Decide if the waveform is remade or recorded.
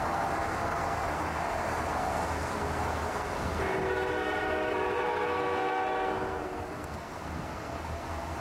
remade